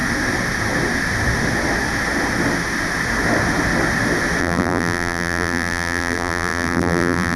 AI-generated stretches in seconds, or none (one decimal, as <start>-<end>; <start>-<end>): 4.4-7.4